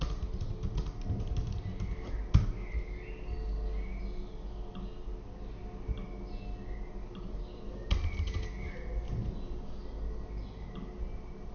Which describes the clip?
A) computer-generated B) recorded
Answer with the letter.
B